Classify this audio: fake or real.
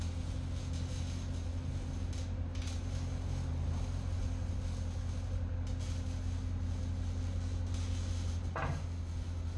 real